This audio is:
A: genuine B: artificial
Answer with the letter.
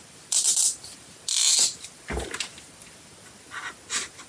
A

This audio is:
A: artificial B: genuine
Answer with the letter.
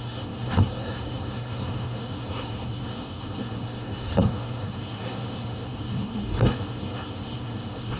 A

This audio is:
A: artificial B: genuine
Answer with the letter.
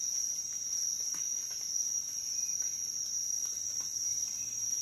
B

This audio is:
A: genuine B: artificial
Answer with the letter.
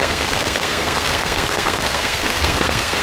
B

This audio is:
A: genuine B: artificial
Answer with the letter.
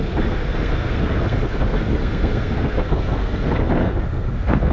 B